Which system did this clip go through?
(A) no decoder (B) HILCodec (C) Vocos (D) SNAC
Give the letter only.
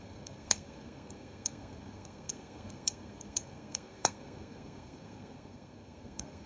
D